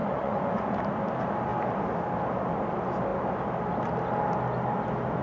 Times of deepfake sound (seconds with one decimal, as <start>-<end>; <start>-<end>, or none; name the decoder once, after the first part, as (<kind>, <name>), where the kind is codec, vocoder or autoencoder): 0.0-0.8 (vocoder, Vocos)